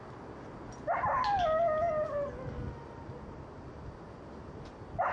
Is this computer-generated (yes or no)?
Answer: no